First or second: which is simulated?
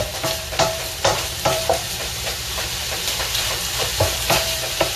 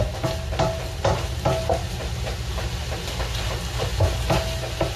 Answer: first